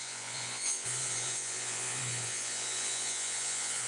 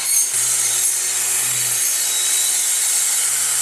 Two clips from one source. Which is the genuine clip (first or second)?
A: second